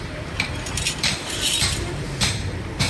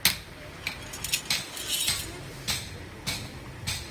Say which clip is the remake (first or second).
first